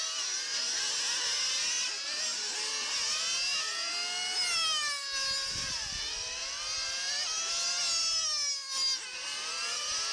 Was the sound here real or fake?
real